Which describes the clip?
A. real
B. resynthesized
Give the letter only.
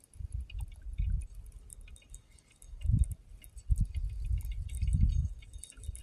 A